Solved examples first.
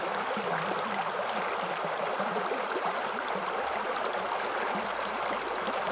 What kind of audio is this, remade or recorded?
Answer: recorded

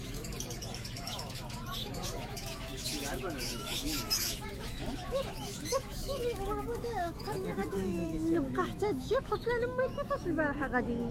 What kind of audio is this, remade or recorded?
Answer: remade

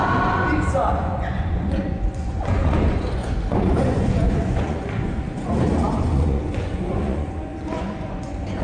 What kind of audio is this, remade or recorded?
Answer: remade